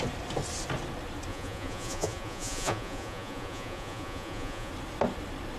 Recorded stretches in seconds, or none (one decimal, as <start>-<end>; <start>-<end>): 0.0-1.3; 4.7-5.6